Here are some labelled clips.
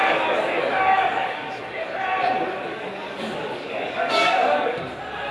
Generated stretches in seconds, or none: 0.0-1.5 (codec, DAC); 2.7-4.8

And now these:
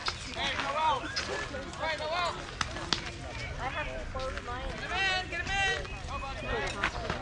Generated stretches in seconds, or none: none

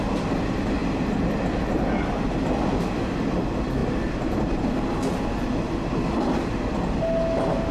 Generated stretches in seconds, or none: none